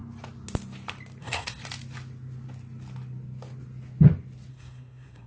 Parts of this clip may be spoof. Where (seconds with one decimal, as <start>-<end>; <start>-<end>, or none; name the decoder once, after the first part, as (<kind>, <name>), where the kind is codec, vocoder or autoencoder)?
1.2-1.6 (codec, SNAC); 4.5-5.3